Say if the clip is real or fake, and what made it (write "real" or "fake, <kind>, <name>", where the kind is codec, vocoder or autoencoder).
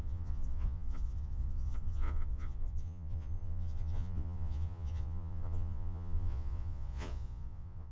fake, vocoder, Vocos